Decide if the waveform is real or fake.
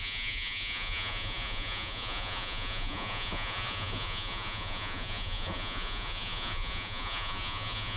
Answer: fake